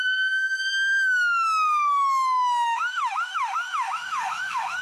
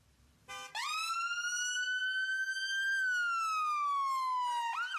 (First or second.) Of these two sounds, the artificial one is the first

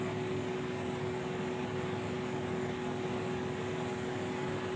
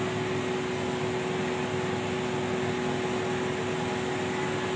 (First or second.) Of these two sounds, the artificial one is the first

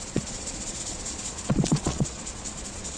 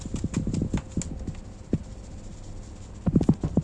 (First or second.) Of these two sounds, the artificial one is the first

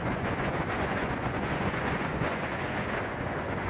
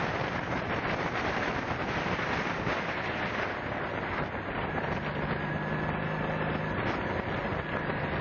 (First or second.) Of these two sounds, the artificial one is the first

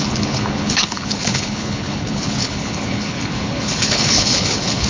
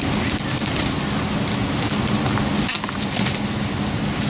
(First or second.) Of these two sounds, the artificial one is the first